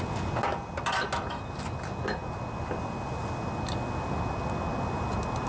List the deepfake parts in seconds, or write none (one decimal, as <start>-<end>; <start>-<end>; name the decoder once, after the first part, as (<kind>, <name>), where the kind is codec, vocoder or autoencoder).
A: none

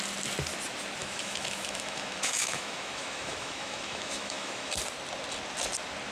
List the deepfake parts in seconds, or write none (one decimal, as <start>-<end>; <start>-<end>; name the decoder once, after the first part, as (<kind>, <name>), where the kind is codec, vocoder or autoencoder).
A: 1.0-4.7 (autoencoder, DAC-VAE)

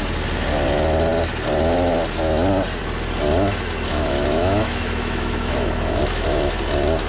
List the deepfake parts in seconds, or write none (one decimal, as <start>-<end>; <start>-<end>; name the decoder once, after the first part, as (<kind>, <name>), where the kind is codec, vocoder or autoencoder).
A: 3.9-6.6 (autoencoder, DAC-VAE)

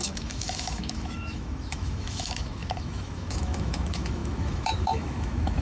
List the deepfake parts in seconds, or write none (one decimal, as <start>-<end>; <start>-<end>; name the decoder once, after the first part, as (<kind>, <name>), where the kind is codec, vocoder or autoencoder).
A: 0.0-5.6 (autoencoder, DAC-VAE)

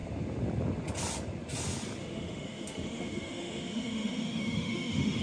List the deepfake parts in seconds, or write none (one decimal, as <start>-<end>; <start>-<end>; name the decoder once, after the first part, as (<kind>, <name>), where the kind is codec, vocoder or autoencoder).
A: 2.0-5.2 (autoencoder, DAC-VAE)

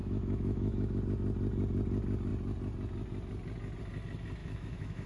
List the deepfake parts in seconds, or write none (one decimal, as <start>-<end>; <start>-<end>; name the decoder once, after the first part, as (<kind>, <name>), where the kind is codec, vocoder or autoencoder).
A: 0.0-1.0 (autoencoder, DAC-VAE); 4.4-5.1